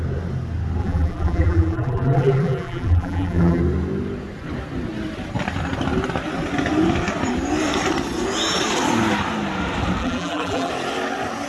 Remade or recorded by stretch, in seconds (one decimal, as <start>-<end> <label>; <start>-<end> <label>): 0.0-0.8 recorded; 0.8-3.6 remade; 3.6-10.0 recorded; 10.0-10.7 remade; 10.7-11.5 recorded